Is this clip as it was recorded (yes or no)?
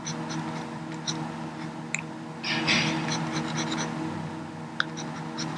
yes